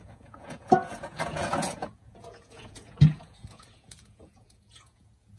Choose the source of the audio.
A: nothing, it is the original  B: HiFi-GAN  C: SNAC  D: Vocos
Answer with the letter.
D